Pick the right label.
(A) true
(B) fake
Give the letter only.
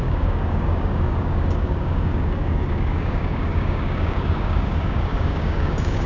B